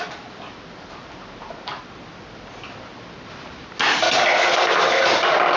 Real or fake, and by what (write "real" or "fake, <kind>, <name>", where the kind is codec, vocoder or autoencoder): real